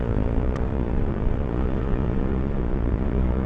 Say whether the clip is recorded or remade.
remade